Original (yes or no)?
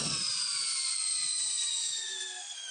yes